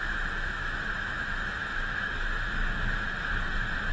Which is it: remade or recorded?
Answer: remade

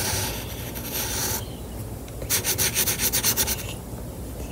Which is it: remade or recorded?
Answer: recorded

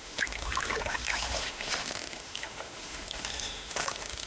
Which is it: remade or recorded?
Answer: remade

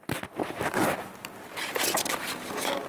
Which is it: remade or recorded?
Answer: recorded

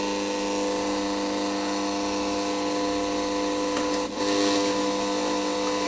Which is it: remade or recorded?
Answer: recorded